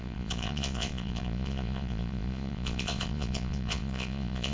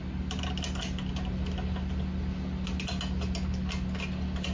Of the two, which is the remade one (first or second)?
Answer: first